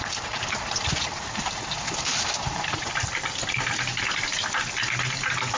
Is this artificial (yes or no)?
no